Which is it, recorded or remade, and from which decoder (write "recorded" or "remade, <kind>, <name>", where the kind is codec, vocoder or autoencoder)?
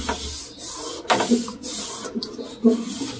recorded